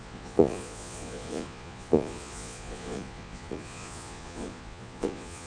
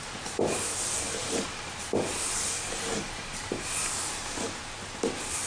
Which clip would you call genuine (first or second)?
second